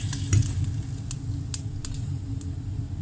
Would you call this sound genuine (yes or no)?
yes